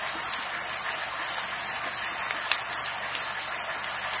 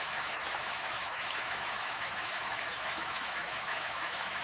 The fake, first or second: second